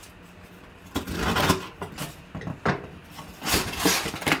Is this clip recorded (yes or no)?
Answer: yes